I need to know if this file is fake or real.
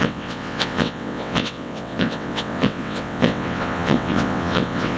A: fake